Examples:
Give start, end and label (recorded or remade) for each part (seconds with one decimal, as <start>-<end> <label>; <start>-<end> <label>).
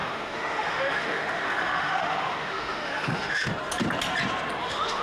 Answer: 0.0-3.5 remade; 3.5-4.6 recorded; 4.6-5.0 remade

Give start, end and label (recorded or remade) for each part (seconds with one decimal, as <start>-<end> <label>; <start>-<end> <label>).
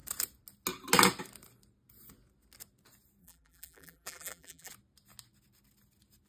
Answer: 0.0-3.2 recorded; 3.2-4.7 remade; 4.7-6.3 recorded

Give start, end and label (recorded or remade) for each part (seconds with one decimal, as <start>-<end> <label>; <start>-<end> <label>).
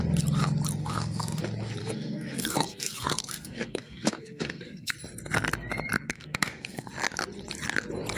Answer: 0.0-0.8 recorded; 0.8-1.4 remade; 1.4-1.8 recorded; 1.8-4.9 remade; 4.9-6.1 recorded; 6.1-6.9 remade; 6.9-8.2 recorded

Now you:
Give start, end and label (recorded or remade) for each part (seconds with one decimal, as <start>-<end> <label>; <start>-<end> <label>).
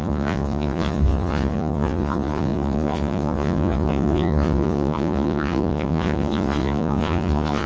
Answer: 0.0-7.7 remade